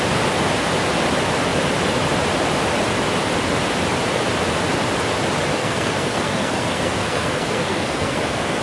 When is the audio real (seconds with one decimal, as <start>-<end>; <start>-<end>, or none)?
0.0-5.6